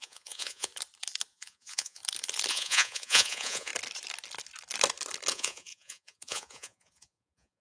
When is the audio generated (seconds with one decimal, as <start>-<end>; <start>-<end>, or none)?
0.0-0.7; 1.3-2.0; 2.5-3.7; 5.3-7.6